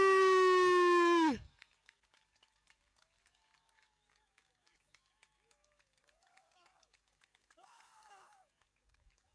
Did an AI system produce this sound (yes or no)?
yes